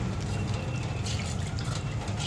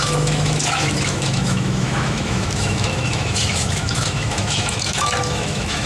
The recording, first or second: first